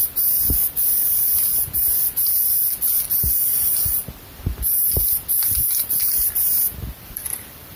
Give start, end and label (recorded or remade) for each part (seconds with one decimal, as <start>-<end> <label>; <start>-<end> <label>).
0.0-1.5 remade; 1.5-5.8 recorded; 5.8-7.8 remade